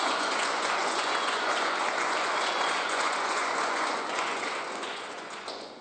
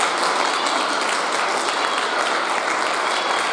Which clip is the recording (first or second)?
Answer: second